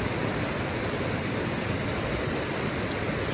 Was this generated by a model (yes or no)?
yes